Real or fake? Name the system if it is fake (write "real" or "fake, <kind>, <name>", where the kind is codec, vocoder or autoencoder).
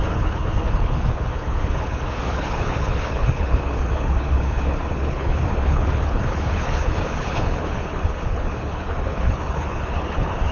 fake, codec, HILCodec